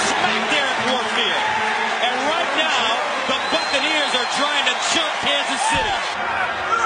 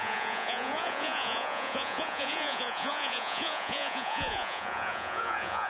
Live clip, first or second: first